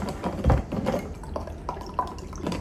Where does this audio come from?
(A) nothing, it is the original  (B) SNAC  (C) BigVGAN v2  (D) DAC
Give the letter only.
A